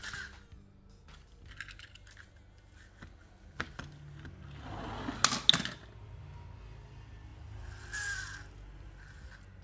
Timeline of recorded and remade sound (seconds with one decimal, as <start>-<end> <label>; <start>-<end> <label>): 0.0-9.6 recorded